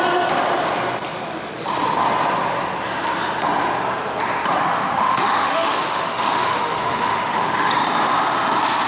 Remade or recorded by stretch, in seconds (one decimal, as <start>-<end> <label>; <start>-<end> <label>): 0.0-4.6 recorded; 4.6-7.7 remade; 7.7-8.9 recorded